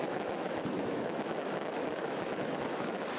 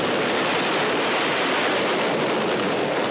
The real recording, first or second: second